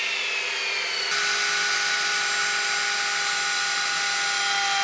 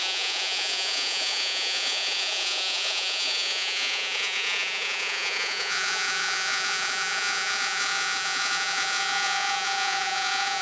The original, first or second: first